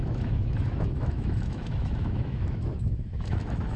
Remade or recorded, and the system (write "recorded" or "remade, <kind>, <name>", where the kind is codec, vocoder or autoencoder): remade, autoencoder, DAC-VAE